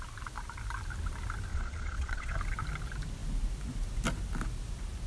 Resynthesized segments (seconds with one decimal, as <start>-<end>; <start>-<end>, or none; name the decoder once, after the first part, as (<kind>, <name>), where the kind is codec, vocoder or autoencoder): 1.5-2.4 (vocoder, Vocos)